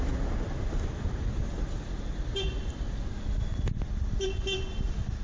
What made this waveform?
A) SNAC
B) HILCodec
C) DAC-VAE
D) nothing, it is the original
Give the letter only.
D